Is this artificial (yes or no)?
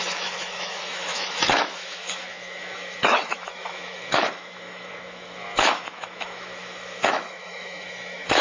yes